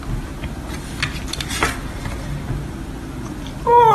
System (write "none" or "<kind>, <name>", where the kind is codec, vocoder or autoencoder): none